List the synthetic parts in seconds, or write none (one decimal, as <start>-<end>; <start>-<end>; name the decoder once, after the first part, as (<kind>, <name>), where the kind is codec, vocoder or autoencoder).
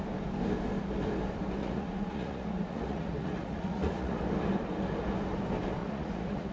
1.6-4.2 (vocoder, Vocos); 5.8-6.5